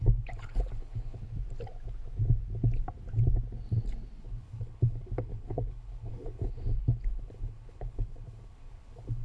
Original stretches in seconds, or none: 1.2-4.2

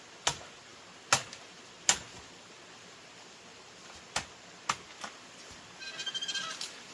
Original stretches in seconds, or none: 0.0-6.9

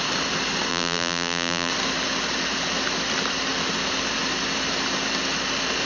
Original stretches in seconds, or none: 0.0-0.7; 1.7-5.9